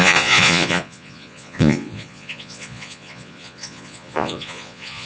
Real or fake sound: fake